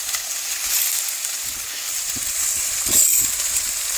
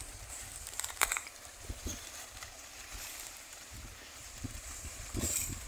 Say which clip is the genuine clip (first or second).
first